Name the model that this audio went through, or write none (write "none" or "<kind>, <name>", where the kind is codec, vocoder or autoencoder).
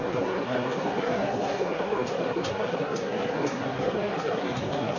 codec, SNAC